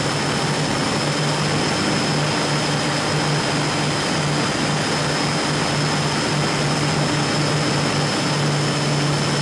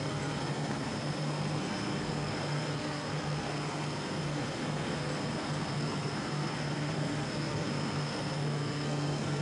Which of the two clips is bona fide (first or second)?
first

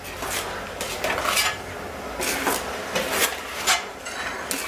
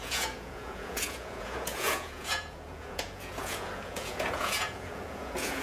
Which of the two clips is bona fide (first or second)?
first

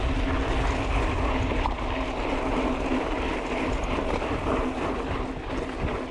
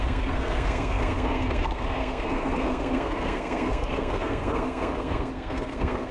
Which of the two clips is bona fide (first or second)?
first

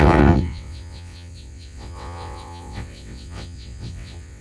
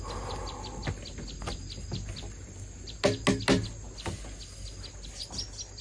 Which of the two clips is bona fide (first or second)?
second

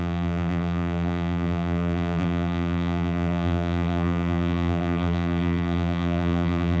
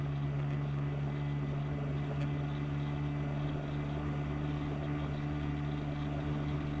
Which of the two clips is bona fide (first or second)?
second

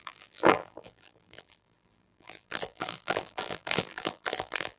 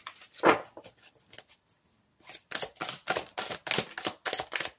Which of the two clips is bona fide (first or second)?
second